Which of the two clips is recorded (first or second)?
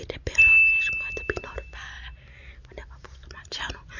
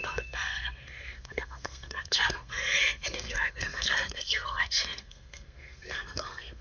first